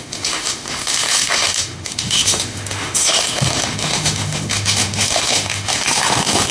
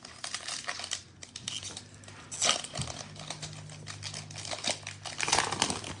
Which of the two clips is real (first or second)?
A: second